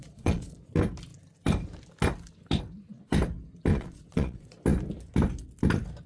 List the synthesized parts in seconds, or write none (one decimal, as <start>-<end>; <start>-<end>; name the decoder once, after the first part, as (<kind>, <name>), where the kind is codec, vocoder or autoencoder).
0.0-0.7 (vocoder, Vocos); 3.7-4.6